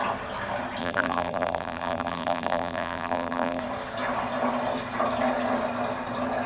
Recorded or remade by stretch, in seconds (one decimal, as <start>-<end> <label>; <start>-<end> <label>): 0.0-0.8 recorded; 0.8-3.6 remade; 3.6-6.5 recorded